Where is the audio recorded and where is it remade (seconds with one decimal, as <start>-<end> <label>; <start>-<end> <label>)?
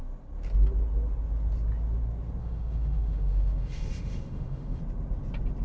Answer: 0.0-2.4 recorded; 2.4-4.8 remade; 4.8-5.6 recorded